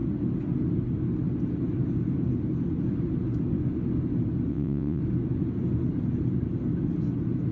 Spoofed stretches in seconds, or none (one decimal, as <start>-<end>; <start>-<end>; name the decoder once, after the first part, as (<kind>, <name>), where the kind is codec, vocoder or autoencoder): 4.5-5.0 (vocoder, WaveNeXt)